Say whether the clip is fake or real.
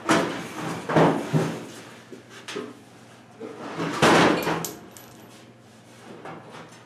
real